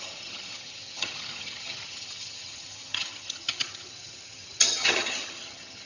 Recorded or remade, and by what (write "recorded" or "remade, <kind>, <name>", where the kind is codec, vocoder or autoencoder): remade, vocoder, HiFi-GAN